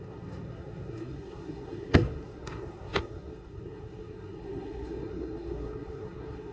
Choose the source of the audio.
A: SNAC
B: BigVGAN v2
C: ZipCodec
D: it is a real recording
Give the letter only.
A